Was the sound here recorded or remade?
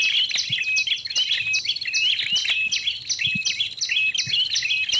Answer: recorded